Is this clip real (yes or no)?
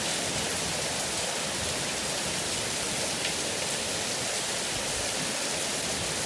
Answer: yes